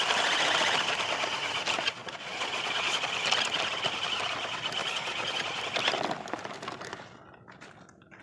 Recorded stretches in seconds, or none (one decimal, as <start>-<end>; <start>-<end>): 0.0-2.0; 3.0-4.8; 5.6-8.2